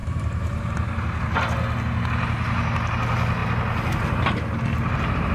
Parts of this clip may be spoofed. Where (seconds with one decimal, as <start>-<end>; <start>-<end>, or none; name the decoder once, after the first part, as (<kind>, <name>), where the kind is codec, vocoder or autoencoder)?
0.0-0.7 (vocoder, BigVGAN v2)